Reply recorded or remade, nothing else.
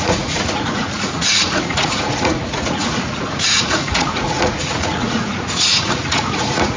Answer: remade